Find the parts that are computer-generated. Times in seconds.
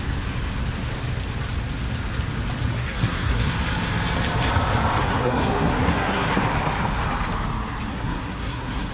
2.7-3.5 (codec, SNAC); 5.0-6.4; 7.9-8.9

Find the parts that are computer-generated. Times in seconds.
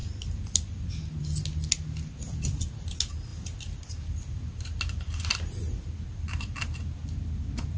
none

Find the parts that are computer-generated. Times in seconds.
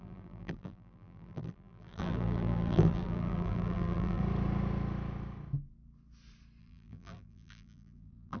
0.0-4.2 (vocoder, BigVGAN v2); 6.6-8.4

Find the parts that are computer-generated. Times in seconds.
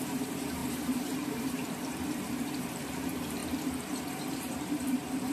0.0-3.4 (vocoder, BigVGAN v2); 4.0-5.3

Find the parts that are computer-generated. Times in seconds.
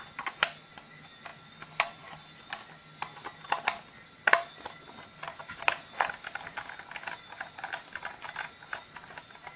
none